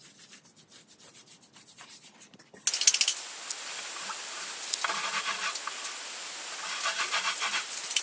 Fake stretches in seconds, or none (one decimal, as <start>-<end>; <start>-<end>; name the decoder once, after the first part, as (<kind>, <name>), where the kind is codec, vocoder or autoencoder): none